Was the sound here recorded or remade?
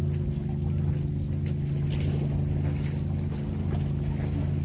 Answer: recorded